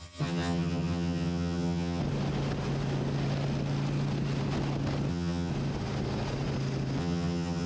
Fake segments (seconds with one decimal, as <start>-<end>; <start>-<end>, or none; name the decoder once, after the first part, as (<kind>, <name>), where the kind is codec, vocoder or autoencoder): 0.0-2.0 (vocoder, HiFi-GAN); 5.1-5.5; 7.0-7.7